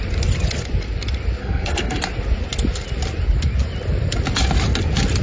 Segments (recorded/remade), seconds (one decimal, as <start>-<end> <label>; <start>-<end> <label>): 0.0-1.4 recorded; 1.4-2.0 remade; 2.0-5.2 recorded